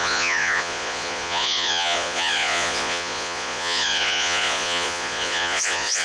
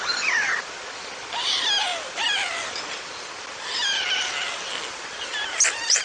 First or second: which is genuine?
second